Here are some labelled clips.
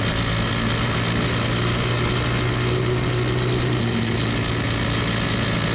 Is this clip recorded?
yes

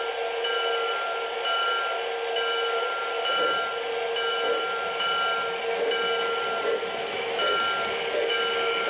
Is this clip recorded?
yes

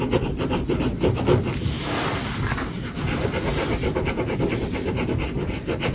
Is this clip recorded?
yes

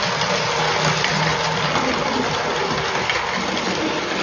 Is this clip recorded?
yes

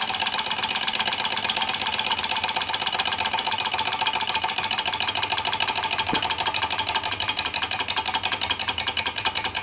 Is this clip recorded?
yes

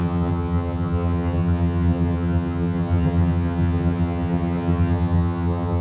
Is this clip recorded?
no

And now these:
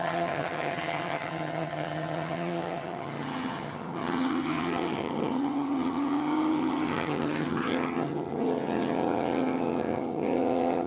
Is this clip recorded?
no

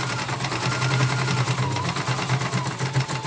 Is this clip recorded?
yes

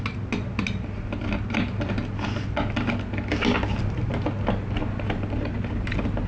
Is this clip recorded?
yes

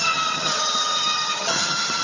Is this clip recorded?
no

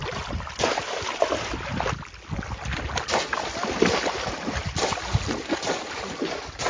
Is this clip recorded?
yes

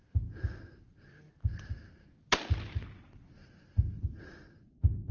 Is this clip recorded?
yes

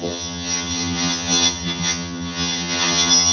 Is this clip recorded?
no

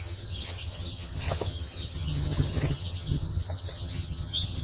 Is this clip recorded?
no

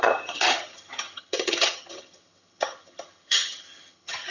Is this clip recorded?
no